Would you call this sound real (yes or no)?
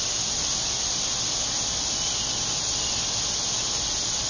yes